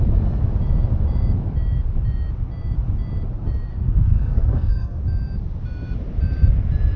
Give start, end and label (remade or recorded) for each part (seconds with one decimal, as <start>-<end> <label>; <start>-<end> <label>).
0.0-3.7 recorded; 3.7-5.0 remade; 5.0-7.0 recorded